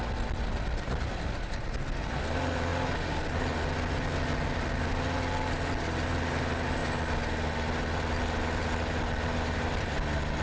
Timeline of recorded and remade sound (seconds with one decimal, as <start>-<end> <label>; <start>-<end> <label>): 0.0-10.4 recorded